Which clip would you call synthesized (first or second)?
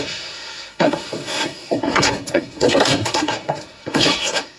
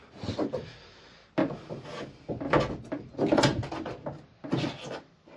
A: first